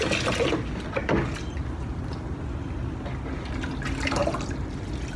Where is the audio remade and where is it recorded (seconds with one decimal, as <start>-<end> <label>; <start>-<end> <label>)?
0.0-5.2 recorded